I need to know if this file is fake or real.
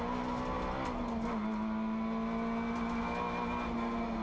real